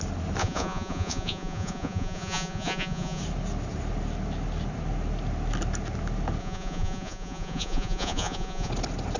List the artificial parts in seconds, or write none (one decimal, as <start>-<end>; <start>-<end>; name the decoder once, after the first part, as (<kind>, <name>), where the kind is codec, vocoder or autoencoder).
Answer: 0.4-3.2 (vocoder, Vocos); 6.4-8.7